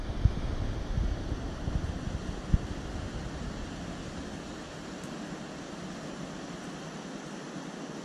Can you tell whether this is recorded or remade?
recorded